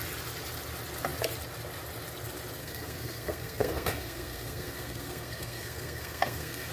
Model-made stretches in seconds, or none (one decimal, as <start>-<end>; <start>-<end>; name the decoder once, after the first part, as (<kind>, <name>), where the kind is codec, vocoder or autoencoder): 2.6-6.7 (codec, SNAC)